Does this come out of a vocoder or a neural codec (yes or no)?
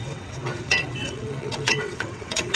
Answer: yes